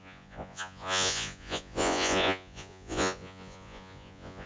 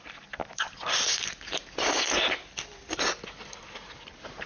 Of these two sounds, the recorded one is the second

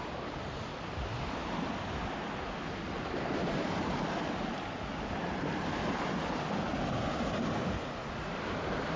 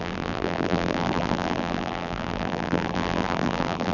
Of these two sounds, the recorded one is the first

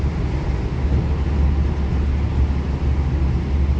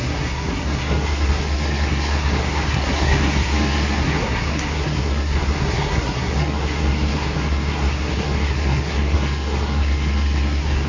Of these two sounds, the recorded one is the first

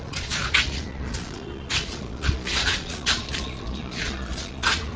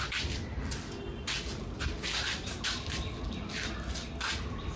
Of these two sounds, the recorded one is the second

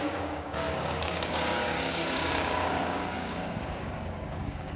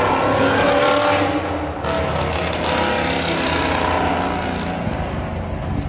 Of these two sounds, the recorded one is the second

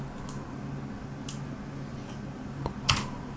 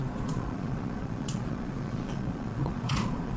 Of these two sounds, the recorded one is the first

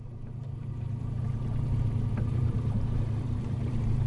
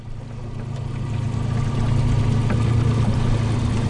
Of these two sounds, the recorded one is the second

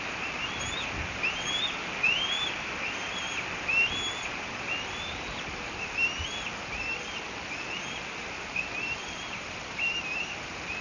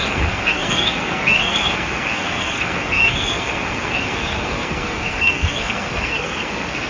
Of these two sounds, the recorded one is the first